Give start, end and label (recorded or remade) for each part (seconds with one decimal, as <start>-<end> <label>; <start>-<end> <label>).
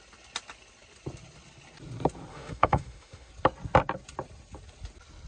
0.0-2.3 recorded; 2.3-3.3 remade; 3.3-5.3 recorded